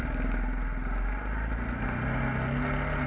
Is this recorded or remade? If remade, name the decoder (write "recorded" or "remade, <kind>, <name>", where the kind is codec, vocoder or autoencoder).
recorded